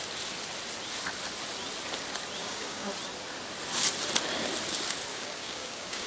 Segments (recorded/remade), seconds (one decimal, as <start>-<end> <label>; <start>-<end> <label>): 0.0-2.4 recorded; 2.4-2.9 remade; 2.9-5.1 recorded; 5.1-6.1 remade